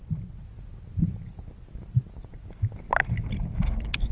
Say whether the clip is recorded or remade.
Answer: recorded